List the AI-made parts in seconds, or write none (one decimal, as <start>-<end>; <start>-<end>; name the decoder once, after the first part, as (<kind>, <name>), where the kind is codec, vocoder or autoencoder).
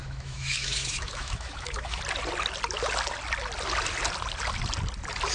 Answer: 0.0-2.0 (autoencoder, DAC-VAE)